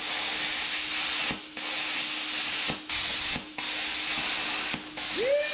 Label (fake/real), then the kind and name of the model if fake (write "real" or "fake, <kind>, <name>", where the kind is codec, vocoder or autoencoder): real